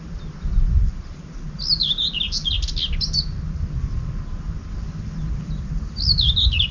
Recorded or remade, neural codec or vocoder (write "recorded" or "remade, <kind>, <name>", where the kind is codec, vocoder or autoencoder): recorded